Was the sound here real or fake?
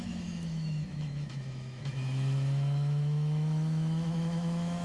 fake